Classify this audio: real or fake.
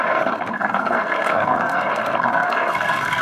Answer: fake